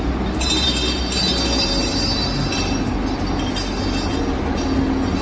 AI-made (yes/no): no